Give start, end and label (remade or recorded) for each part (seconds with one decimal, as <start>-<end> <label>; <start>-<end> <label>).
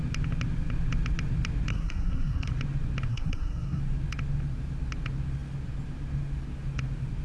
0.0-1.7 recorded; 1.7-2.5 remade; 2.5-3.1 recorded; 3.1-3.8 remade; 3.8-7.2 recorded